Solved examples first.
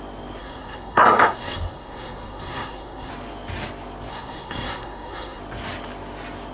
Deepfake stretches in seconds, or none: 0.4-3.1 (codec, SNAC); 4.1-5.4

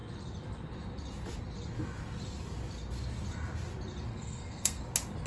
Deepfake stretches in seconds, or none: 4.1-4.8 (codec, SNAC)

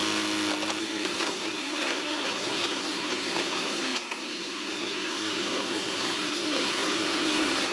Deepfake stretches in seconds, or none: 0.8-7.7 (codec, SNAC)

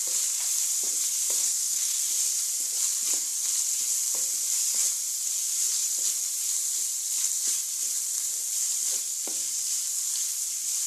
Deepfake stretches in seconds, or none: 1.4-2.0 (codec, SNAC)

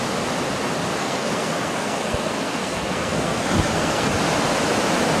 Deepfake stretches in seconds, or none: 1.0-4.1 (codec, SNAC)

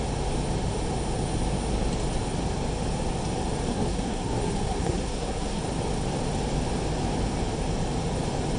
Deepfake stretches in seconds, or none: 3.7-5.6 (codec, SNAC)

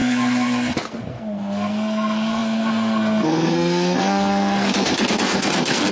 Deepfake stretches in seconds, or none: 0.0-5.9 (codec, SNAC)

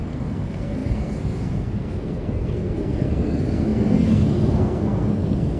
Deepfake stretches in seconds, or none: 0.0-5.6 (codec, SNAC)